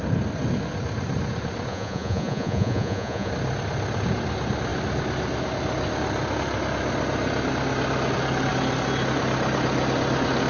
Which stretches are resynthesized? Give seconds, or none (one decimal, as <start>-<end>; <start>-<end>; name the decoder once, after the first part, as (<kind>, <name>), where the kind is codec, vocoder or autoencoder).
1.7-3.3 (vocoder, Vocos)